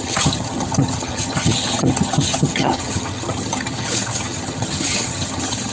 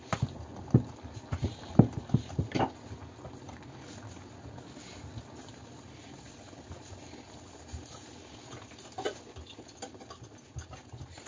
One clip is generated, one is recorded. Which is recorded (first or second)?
second